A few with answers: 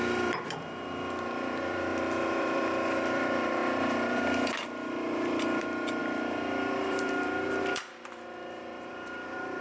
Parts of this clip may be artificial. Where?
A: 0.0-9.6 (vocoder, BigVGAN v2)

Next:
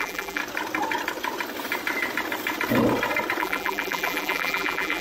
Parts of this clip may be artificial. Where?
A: 0.0-0.4 (vocoder, BigVGAN v2); 3.4-5.0

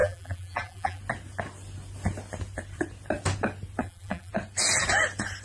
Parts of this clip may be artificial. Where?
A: 0.0-1.0 (vocoder, BigVGAN v2); 3.8-4.3

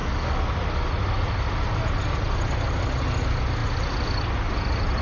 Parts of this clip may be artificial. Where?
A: none

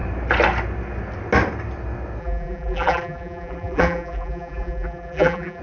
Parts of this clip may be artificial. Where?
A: 2.2-5.6 (vocoder, BigVGAN v2)

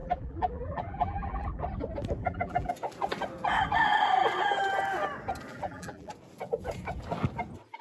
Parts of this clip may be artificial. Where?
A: 0.0-1.6 (vocoder, BigVGAN v2); 2.2-2.7; 5.5-6.1

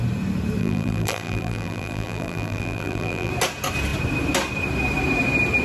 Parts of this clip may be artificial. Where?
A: 0.6-3.3 (vocoder, BigVGAN v2)

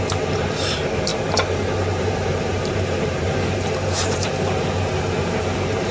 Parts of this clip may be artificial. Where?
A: 0.0-5.9 (vocoder, BigVGAN v2)